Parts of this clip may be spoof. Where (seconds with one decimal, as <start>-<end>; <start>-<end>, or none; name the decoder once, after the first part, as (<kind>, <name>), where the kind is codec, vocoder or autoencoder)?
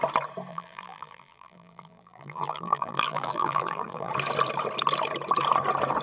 0.5-4.1 (vocoder, BigVGAN v2)